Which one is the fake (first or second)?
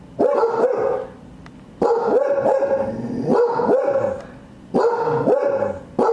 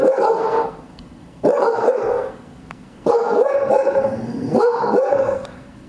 second